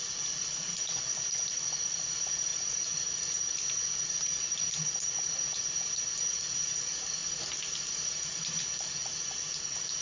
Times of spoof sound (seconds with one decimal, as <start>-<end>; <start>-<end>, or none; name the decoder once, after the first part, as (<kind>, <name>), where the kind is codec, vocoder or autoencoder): 7.2-8.6 (vocoder, BigVGAN v2)